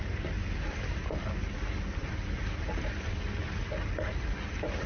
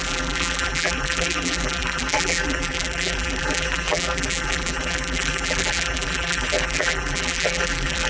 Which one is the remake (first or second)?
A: second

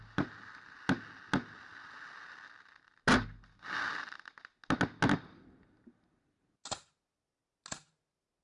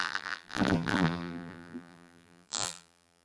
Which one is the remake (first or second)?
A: second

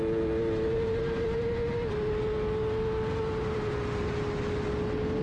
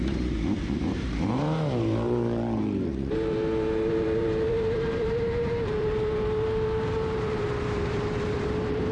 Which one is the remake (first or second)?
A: second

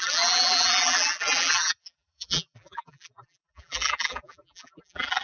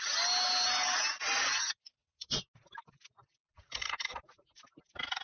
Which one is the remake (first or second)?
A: first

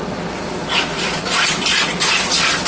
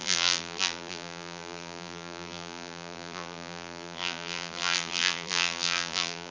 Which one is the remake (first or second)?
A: second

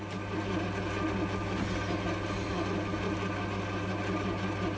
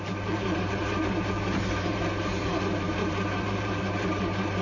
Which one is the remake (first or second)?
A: second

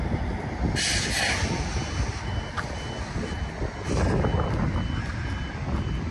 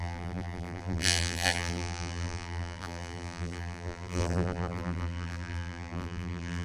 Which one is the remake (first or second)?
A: second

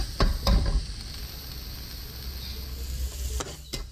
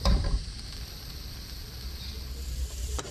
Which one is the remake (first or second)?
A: second